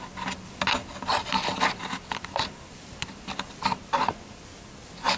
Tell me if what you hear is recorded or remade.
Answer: recorded